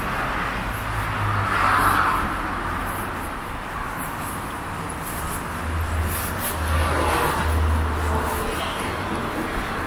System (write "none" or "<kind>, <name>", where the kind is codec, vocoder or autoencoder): none